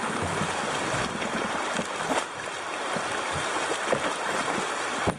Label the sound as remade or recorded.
recorded